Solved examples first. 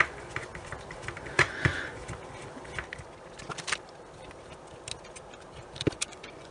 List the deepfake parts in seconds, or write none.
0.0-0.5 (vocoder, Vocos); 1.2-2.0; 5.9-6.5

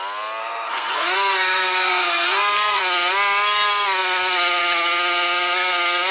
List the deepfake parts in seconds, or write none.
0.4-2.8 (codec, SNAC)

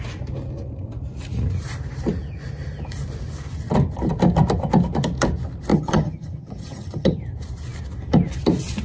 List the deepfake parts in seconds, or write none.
5.7-7.2 (vocoder, HiFi-GAN)

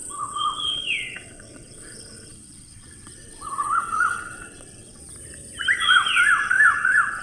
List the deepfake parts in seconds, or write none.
0.0-5.0 (vocoder, WaveNeXt); 5.8-7.2